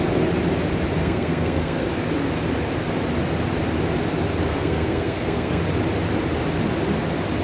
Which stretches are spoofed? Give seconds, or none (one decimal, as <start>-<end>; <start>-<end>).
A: 1.0-1.9; 4.5-5.6